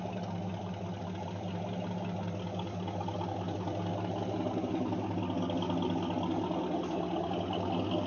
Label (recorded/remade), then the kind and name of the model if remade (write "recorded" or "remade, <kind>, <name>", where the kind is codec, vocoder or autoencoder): recorded